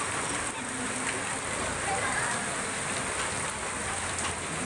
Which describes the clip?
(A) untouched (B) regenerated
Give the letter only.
B